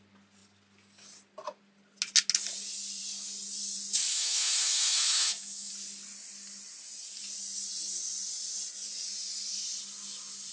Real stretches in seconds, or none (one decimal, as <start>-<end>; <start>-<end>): 0.0-4.1; 5.7-10.5

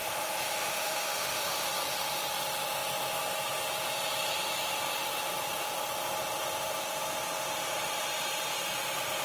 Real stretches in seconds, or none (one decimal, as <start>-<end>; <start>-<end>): 1.7-9.2

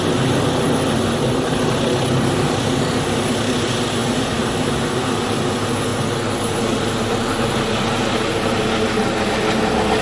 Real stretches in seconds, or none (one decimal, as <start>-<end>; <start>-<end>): 0.0-10.0

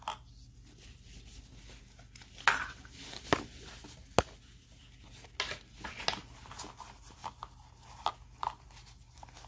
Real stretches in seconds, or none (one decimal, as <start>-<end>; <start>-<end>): 0.0-9.5

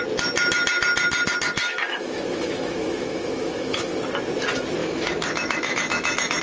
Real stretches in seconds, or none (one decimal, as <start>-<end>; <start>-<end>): 0.0-1.6; 4.0-4.8

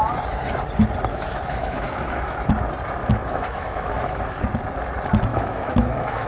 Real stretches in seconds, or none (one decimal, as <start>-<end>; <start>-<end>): 0.0-1.1; 2.5-3.0; 4.2-5.3

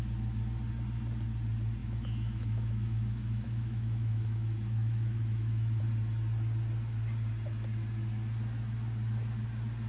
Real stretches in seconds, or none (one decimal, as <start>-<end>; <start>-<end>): 0.0-1.8; 5.8-9.9